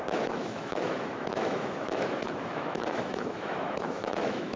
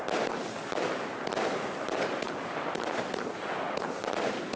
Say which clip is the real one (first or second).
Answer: second